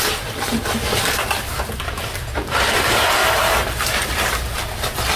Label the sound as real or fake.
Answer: real